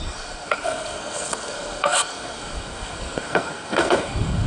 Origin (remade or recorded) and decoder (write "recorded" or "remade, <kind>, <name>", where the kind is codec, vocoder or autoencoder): remade, codec, SNAC